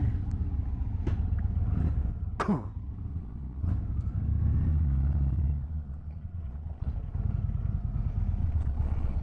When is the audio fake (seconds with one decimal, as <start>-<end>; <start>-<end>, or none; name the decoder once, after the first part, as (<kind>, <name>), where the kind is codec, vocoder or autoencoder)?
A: 3.1-3.7 (vocoder, Vocos); 4.7-6.9; 8.4-9.2